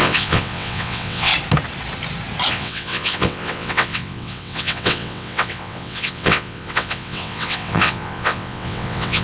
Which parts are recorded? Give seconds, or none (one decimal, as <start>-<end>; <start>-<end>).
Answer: 1.3-2.5